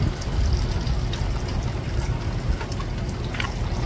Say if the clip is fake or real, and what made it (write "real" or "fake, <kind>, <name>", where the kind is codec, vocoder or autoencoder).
real